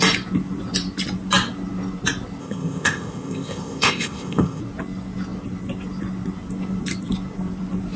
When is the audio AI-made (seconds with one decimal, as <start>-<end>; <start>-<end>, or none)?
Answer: 2.4-4.6

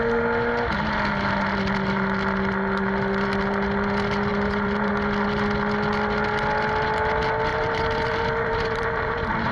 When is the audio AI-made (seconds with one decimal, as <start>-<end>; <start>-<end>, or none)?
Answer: 4.3-4.9; 7.5-9.5

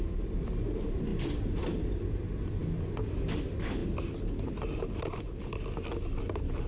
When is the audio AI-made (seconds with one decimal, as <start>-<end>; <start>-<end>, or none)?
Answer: none

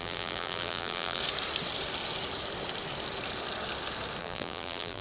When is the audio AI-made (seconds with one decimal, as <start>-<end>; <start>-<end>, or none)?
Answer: 0.0-1.2; 4.2-5.0

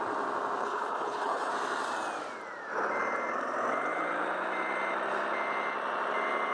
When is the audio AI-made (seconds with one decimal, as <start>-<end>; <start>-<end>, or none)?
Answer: 0.6-1.5

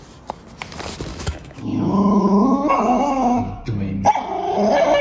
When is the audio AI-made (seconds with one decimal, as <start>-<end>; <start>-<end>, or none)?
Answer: 1.1-3.6

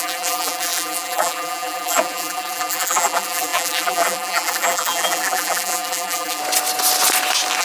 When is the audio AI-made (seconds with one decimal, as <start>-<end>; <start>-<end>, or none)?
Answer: 0.0-6.4